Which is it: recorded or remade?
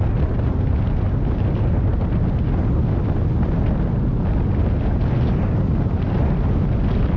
recorded